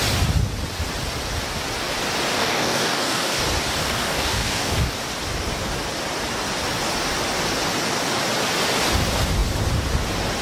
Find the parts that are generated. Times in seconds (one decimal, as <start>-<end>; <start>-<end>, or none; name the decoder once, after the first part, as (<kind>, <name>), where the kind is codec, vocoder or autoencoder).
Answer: 2.3-3.4 (codec, DAC); 3.8-4.9